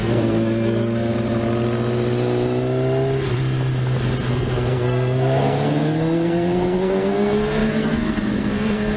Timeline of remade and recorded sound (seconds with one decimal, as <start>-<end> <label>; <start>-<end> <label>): 0.0-1.1 remade; 1.1-4.3 recorded; 4.3-9.0 remade